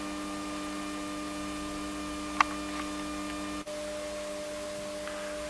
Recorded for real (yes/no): yes